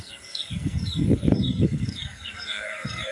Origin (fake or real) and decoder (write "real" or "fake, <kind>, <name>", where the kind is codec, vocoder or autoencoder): fake, codec, SNAC